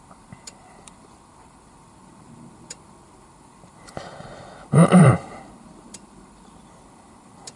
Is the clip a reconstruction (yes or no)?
yes